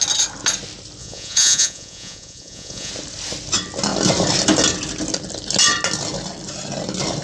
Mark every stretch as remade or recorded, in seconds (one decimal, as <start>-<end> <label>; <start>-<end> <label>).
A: 0.0-1.0 recorded; 1.0-2.9 remade; 2.9-7.2 recorded